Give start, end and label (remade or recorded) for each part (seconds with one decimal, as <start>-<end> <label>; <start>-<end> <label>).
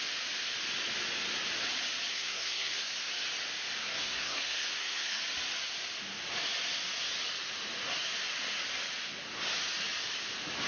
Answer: 0.0-2.1 recorded; 2.1-3.1 remade; 3.1-3.8 recorded; 3.8-5.2 remade; 5.2-10.7 recorded